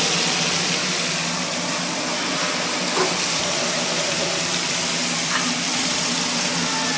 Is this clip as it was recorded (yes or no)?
yes